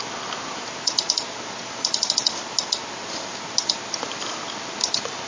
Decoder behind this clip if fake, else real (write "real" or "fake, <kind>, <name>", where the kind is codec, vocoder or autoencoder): real